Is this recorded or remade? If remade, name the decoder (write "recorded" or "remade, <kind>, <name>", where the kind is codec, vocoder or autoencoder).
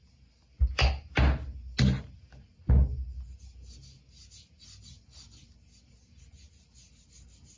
recorded